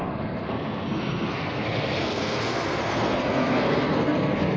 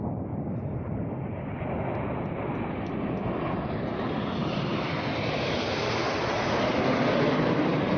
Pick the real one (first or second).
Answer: second